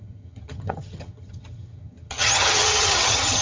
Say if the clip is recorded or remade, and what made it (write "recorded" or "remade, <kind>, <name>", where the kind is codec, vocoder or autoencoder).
remade, vocoder, HiFi-GAN